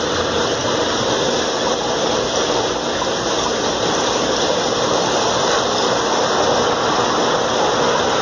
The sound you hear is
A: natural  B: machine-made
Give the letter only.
A